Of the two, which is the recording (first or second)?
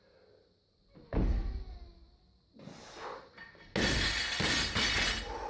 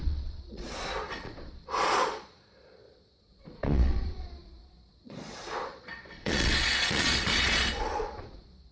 first